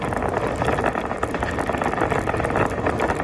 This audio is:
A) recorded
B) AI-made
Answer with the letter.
A